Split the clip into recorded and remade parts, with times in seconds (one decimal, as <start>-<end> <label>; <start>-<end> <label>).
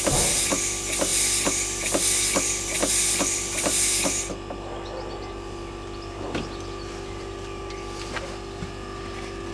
0.0-9.5 recorded